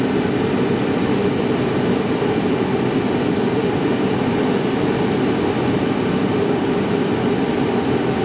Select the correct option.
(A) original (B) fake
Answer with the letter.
A